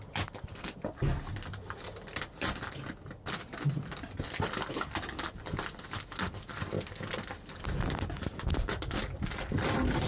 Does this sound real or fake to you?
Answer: real